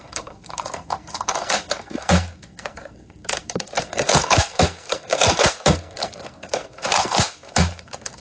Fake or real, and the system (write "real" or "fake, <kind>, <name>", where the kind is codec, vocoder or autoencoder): fake, codec, SNAC